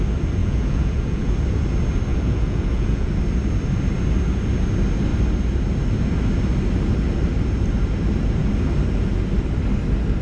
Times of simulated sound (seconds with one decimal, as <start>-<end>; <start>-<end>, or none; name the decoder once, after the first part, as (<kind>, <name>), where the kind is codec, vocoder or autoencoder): 0.4-1.3 (vocoder, Vocos); 2.1-3.1